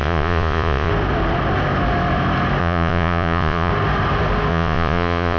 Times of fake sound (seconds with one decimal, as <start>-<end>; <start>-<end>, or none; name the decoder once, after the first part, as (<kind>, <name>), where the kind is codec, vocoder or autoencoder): 0.0-0.9 (vocoder, Vocos); 2.6-3.7; 4.5-5.4